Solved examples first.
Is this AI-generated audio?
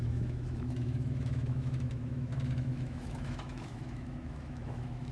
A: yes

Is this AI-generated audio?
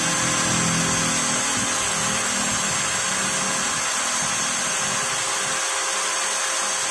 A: no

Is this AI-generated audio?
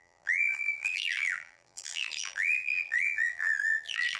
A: yes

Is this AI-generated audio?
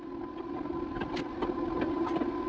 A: no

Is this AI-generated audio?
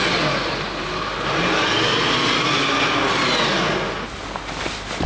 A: no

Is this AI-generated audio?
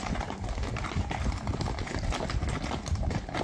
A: no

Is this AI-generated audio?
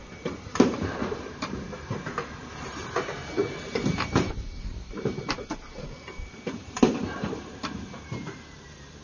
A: yes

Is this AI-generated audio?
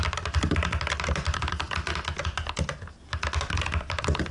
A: no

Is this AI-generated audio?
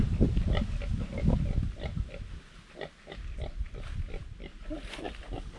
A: no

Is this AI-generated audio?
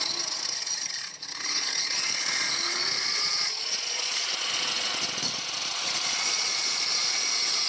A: yes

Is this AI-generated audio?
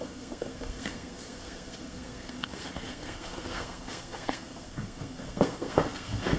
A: yes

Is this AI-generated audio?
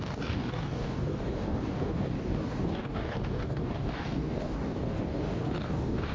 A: yes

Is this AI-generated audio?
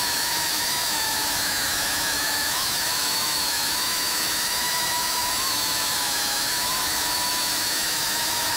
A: yes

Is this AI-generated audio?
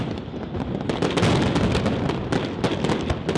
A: no